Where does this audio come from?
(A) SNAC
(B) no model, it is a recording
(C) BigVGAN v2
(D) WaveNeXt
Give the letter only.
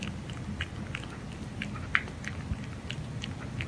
B